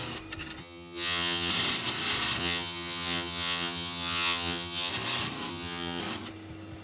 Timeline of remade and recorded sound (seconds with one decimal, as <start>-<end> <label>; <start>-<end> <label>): 0.0-0.6 recorded; 0.6-1.5 remade; 1.5-2.4 recorded; 2.4-4.9 remade; 4.9-5.5 recorded; 5.5-6.0 remade; 6.0-6.8 recorded